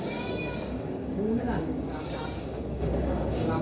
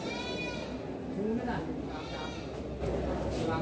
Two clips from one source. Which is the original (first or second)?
second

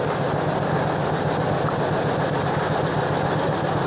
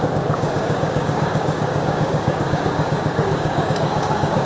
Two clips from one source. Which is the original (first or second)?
first